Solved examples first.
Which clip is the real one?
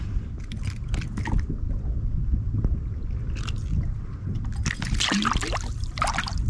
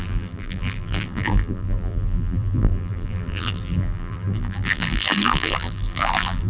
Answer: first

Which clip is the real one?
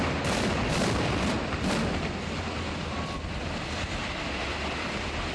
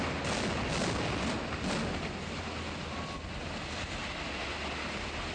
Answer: second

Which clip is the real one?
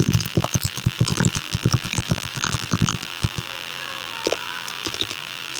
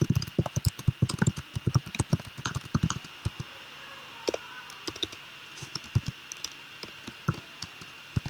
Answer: second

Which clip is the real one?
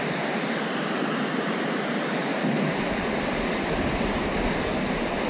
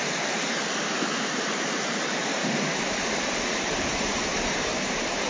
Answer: first